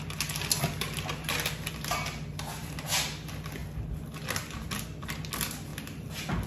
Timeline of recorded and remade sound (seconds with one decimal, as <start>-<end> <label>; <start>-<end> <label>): 0.0-6.5 recorded